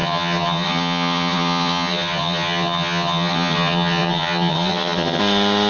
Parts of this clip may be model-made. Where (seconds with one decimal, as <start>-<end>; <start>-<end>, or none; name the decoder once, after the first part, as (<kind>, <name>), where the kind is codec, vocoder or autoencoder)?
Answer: 0.0-5.2 (vocoder, HiFi-GAN)